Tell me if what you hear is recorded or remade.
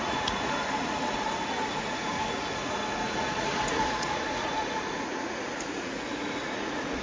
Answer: remade